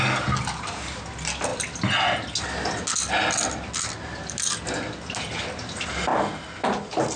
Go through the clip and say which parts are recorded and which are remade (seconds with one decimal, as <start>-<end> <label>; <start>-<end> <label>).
0.0-7.2 recorded